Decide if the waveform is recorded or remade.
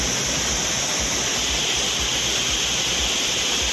recorded